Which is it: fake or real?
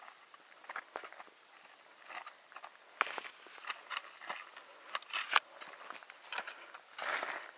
real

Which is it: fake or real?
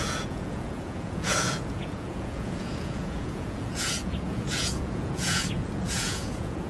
fake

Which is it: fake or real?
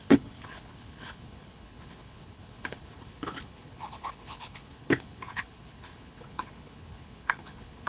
fake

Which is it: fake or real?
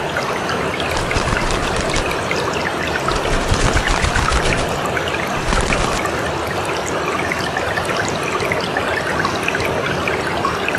real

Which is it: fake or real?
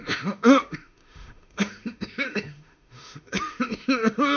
fake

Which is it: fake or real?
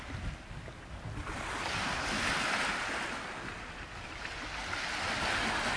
real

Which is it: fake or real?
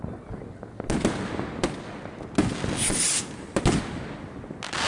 real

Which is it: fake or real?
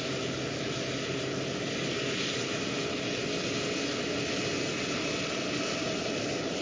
real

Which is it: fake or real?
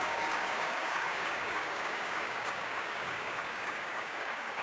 fake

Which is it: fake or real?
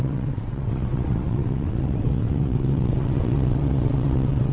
fake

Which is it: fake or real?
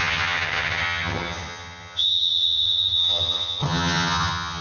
fake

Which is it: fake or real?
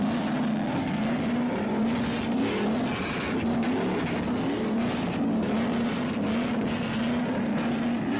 real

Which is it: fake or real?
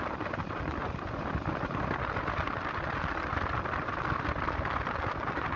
real